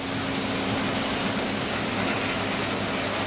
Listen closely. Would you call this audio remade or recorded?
recorded